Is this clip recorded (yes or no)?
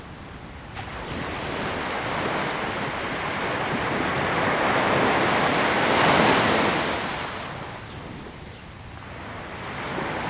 yes